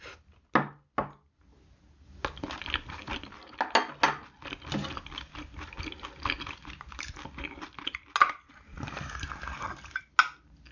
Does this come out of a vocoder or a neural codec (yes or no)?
no